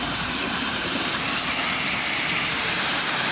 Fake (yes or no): no